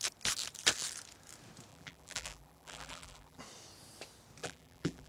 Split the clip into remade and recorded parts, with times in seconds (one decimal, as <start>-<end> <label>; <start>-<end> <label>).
0.0-1.7 recorded; 1.7-3.4 remade; 3.4-4.4 recorded; 4.4-5.1 remade